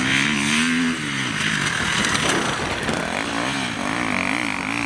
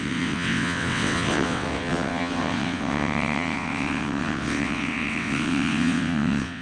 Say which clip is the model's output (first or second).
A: second